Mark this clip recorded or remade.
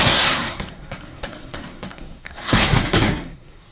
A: remade